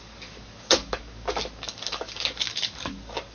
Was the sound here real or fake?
fake